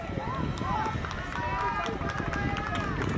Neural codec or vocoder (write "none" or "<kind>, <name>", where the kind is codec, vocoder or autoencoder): none